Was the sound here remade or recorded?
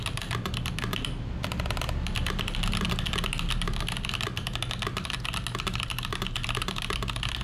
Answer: recorded